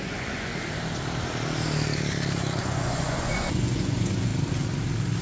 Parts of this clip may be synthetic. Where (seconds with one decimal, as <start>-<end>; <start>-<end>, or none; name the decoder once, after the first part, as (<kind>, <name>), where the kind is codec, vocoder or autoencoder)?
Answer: 0.0-0.5 (vocoder, Vocos); 2.6-4.3